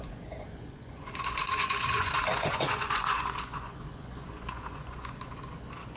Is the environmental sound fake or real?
fake